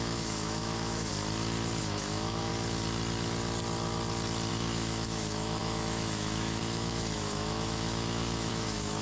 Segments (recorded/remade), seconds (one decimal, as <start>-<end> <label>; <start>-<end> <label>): 0.0-1.1 remade; 1.1-1.8 recorded; 1.8-2.5 remade; 2.5-4.5 recorded; 4.5-9.0 remade